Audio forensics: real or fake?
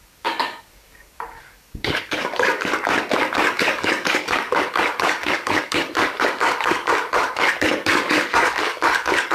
fake